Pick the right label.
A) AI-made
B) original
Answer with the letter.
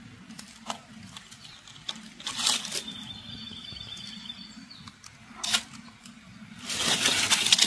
B